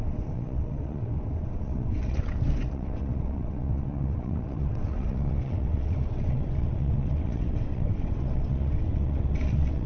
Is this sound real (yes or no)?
no